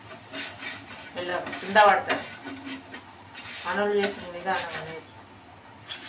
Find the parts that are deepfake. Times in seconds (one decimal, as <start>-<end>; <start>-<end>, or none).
none